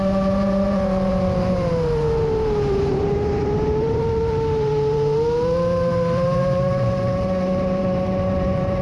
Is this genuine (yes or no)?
no